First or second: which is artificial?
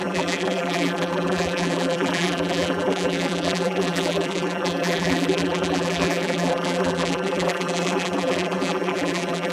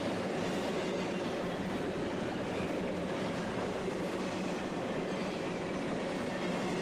first